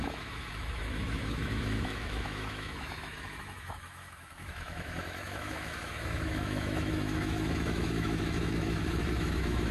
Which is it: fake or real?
fake